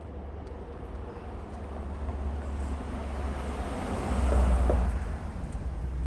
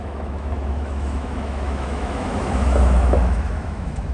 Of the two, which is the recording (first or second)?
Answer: first